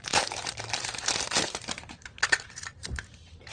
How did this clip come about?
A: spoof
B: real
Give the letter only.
A